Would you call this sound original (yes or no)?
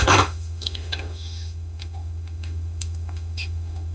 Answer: no